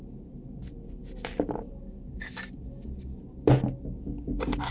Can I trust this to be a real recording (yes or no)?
yes